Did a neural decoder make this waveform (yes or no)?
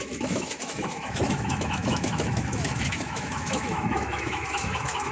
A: yes